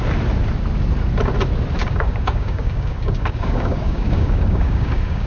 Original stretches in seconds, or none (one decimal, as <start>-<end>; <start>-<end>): 0.0-1.8